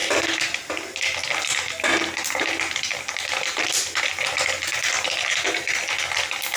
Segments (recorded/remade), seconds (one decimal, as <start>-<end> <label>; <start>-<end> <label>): 0.0-6.6 recorded